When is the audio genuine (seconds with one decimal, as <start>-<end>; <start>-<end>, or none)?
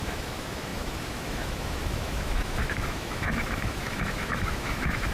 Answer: none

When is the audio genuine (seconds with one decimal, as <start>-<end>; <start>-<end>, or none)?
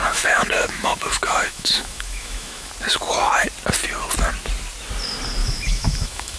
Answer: 2.7-5.4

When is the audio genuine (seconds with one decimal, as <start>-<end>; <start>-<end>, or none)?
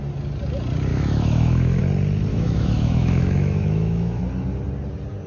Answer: 0.0-0.9; 1.8-2.3; 4.2-5.3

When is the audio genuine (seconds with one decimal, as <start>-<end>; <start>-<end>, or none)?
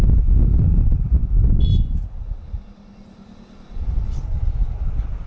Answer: 0.0-5.3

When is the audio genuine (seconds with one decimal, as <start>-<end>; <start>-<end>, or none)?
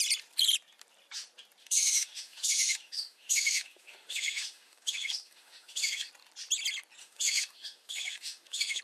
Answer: 0.0-1.6; 6.1-7.0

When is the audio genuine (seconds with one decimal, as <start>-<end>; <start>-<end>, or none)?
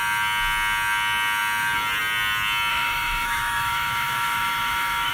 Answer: 0.0-2.7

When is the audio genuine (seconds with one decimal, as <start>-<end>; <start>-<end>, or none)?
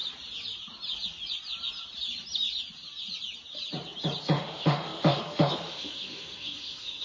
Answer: 0.0-4.2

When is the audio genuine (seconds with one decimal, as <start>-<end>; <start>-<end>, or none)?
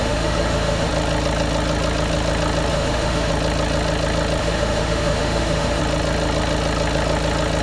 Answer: 0.9-2.7; 3.3-4.4; 5.8-7.6